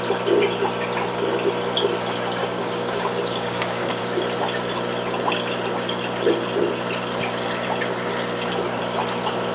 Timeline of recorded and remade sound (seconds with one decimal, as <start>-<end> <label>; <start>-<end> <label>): 0.0-2.4 recorded; 2.4-4.0 remade; 4.0-9.5 recorded